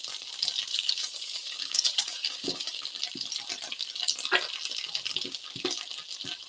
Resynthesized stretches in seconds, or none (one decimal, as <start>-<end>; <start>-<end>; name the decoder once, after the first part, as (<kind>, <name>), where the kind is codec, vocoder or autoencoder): 0.7-2.9 (codec, DAC)